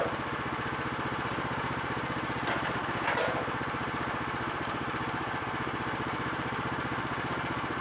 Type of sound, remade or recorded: remade